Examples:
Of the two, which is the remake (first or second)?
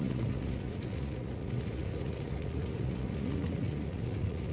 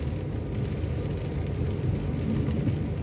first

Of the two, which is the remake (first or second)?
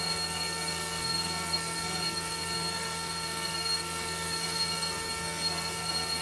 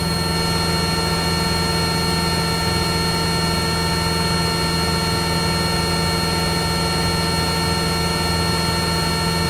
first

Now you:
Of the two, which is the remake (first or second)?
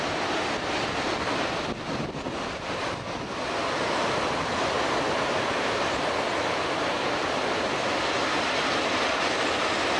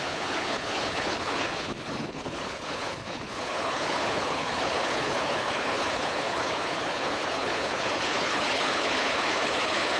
second